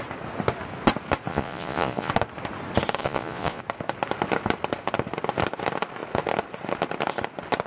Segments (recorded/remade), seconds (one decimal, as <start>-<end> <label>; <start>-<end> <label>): 0.0-1.3 recorded; 1.3-2.1 remade; 2.1-3.0 recorded; 3.0-3.6 remade; 3.6-7.7 recorded